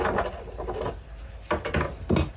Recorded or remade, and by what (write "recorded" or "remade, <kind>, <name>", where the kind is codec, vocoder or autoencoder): recorded